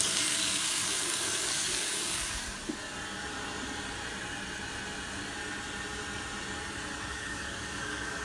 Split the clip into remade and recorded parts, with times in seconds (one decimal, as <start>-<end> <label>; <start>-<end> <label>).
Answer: 0.0-2.4 remade; 2.4-7.1 recorded; 7.1-8.2 remade